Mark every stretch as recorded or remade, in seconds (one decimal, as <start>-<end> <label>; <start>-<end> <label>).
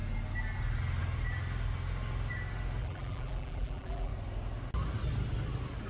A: 0.0-2.8 recorded; 2.8-4.1 remade; 4.1-5.9 recorded